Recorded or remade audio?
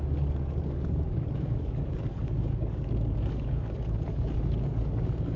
remade